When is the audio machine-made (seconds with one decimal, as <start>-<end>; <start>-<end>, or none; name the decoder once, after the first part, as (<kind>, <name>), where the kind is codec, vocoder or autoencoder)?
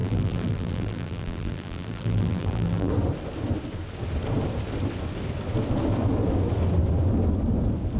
0.0-2.9 (vocoder, BigVGAN v2)